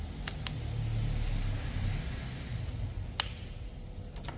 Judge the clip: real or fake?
real